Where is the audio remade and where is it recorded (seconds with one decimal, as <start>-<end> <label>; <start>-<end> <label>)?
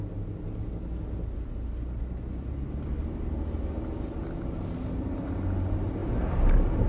0.0-6.9 recorded